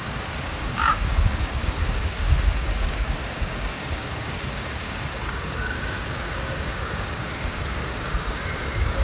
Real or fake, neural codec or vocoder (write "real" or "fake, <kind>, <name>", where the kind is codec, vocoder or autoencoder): fake, codec, DAC